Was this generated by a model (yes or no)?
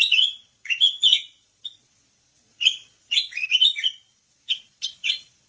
yes